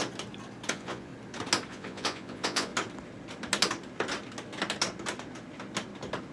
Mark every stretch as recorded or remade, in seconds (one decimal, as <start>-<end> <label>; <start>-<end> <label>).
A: 0.0-0.7 recorded; 0.7-1.1 remade; 1.1-1.7 recorded; 1.7-2.7 remade; 2.7-6.3 recorded